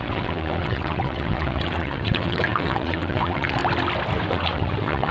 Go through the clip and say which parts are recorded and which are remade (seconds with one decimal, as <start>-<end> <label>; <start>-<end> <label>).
0.0-3.6 remade; 3.6-4.3 recorded; 4.3-5.1 remade